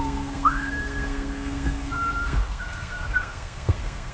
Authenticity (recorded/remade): remade